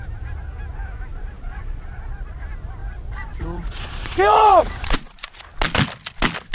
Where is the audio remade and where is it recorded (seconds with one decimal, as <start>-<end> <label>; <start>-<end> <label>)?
0.0-1.1 recorded; 1.1-2.4 remade; 2.4-2.8 recorded; 2.8-5.4 remade; 5.4-6.5 recorded